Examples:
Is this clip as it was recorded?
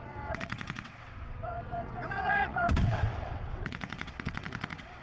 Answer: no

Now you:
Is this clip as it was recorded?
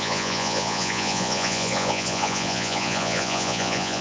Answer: no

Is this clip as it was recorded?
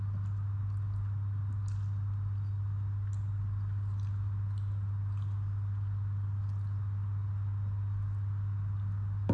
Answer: yes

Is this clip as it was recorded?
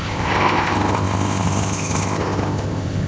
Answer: no